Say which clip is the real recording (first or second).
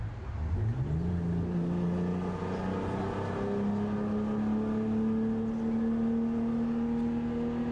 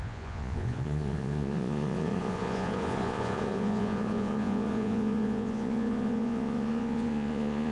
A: first